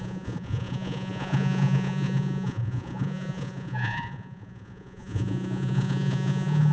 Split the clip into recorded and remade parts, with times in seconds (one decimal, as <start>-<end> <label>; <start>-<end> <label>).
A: 0.0-6.7 remade